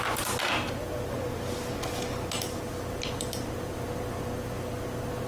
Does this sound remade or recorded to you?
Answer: recorded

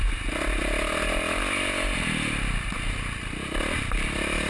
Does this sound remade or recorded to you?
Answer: recorded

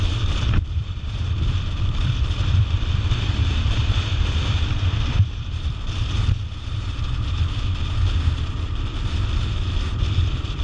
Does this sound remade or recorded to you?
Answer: remade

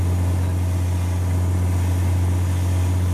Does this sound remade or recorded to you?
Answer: recorded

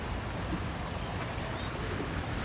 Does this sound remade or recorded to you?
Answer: remade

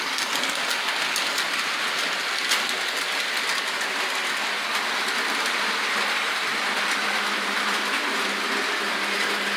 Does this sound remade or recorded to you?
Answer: recorded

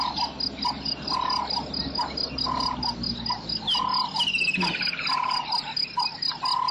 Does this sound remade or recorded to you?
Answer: recorded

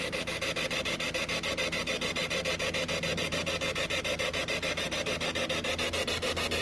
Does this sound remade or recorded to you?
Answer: recorded